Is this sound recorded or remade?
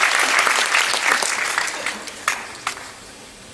recorded